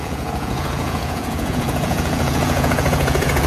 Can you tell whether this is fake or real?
fake